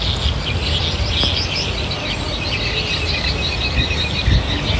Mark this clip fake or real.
real